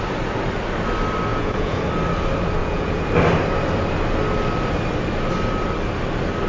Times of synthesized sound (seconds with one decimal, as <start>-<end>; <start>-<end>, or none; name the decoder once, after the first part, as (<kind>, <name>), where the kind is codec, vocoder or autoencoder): 1.3-1.8 (vocoder, Vocos); 2.6-3.1